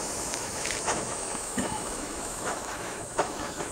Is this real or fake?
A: fake